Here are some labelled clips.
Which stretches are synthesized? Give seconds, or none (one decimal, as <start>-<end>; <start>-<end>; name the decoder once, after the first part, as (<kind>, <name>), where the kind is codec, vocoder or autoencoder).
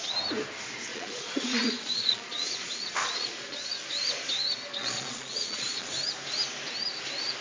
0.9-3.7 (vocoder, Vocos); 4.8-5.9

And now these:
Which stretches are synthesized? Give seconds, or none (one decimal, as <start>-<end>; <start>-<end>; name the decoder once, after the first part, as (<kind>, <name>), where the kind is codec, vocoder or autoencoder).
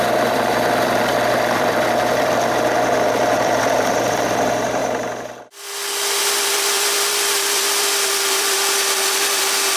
0.0-4.8 (vocoder, BigVGAN v2); 6.2-9.8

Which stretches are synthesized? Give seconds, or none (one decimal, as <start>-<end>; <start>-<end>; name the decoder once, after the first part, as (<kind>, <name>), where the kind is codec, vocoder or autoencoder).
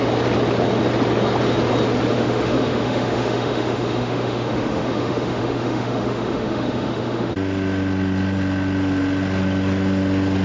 2.1-7.3 (autoencoder, DAC-VAE)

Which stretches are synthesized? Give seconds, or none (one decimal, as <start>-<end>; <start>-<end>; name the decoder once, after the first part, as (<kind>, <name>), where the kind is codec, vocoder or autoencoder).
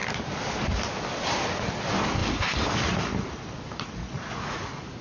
4.0-5.0 (vocoder, Vocos)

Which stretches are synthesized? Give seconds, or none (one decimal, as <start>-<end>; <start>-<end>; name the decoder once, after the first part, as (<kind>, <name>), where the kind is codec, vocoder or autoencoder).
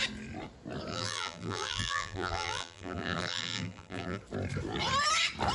0.9-4.2 (vocoder, BigVGAN v2)